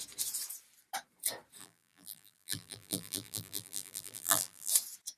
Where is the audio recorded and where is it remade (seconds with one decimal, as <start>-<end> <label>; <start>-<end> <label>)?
0.0-1.6 recorded; 1.6-4.7 remade; 4.7-5.2 recorded

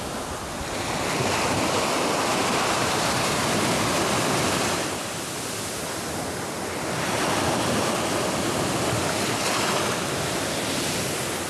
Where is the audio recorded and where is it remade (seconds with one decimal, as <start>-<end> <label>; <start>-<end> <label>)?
0.0-2.3 recorded; 2.3-3.4 remade; 3.4-11.5 recorded